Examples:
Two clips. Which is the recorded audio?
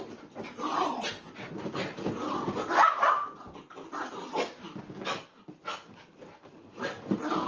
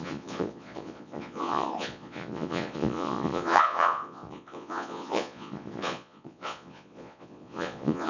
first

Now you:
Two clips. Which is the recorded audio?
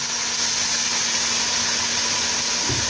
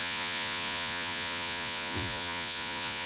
first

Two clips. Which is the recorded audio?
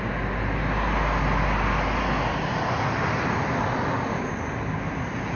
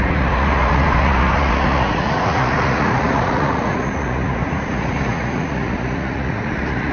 first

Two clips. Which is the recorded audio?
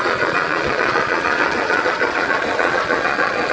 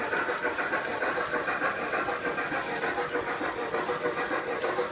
second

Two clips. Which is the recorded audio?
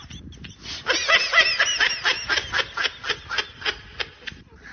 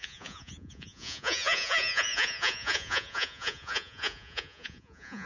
first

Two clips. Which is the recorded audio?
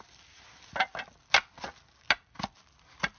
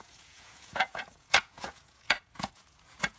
first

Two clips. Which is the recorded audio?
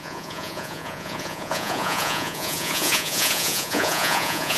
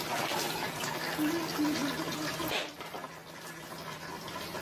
second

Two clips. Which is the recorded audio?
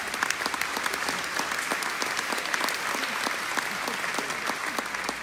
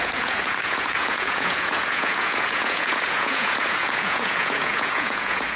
first